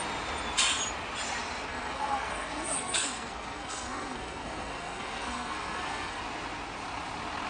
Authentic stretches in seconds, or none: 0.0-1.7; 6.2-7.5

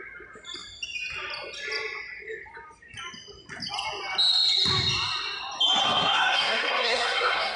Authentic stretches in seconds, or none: 0.0-5.8

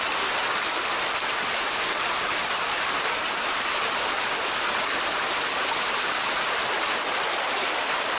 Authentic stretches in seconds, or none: 0.0-8.2

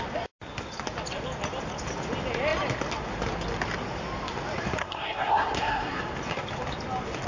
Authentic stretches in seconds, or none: 0.0-4.8; 6.0-7.3

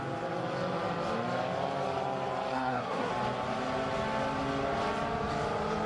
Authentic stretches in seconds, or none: 0.0-2.5; 3.1-5.9